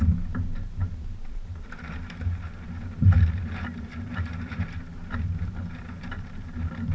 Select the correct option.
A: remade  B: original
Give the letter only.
A